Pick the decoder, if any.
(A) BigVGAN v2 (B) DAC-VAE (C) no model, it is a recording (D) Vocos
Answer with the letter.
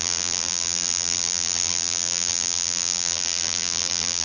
A